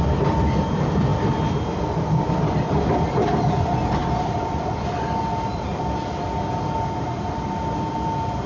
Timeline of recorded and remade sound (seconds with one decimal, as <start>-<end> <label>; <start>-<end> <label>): 0.0-4.0 recorded; 4.0-4.7 remade; 4.7-8.5 recorded